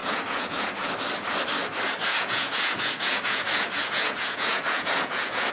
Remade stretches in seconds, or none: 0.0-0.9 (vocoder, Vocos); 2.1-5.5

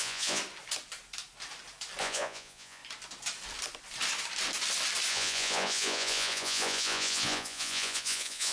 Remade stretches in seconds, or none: 0.0-0.4 (vocoder, Vocos); 2.0-2.8; 5.1-8.5

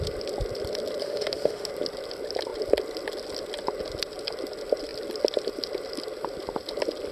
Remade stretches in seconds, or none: 1.0-1.7 (autoencoder, DAC-VAE)

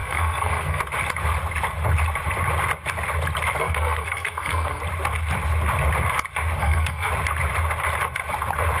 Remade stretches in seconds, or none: 0.0-0.8 (codec, SNAC); 3.6-4.8; 6.6-7.1

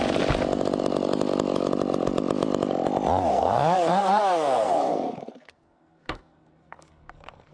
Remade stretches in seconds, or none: 3.3-7.5 (codec, SNAC)

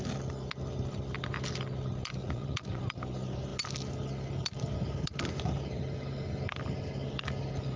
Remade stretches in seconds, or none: 2.2-2.8 (vocoder, Vocos)